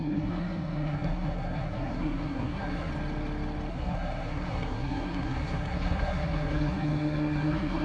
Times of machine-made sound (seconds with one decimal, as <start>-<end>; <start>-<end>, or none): 0.0-2.9; 3.7-7.8